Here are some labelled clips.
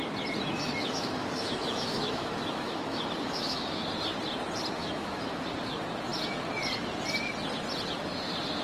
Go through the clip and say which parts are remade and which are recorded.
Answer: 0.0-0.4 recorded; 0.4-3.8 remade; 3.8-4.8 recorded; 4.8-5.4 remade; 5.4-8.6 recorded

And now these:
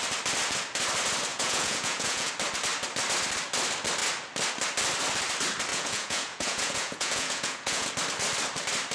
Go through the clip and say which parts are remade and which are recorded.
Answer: 0.0-1.3 recorded; 1.3-2.3 remade; 2.3-5.7 recorded; 5.7-7.9 remade; 7.9-8.9 recorded

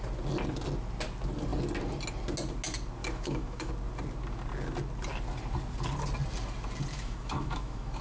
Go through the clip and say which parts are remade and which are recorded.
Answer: 0.0-3.0 recorded; 3.0-3.7 remade; 3.7-6.9 recorded; 6.9-8.0 remade

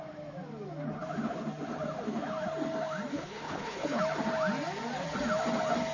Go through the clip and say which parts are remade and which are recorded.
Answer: 0.0-3.1 recorded; 3.1-4.0 remade; 4.0-5.9 recorded

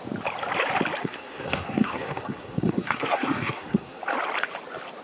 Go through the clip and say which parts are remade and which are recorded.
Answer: 0.0-1.0 recorded; 1.0-4.0 remade; 4.0-5.0 recorded

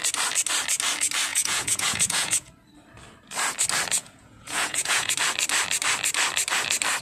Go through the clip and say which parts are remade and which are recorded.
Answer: 0.0-1.3 recorded; 1.3-2.5 remade; 2.5-4.0 recorded; 4.0-5.1 remade; 5.1-7.0 recorded

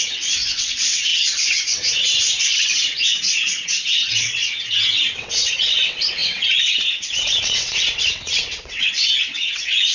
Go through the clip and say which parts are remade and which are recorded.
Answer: 0.0-9.9 remade